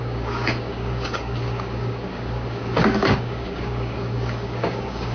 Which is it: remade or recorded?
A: remade